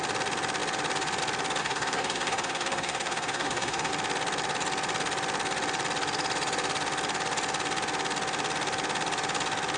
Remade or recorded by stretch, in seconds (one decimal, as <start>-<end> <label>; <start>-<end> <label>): 0.0-1.6 recorded; 1.6-3.9 remade; 3.9-9.8 recorded